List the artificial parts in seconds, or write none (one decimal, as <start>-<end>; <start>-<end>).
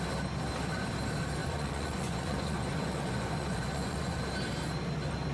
1.4-4.2